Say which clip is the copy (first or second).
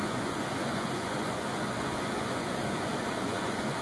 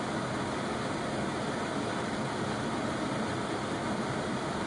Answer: first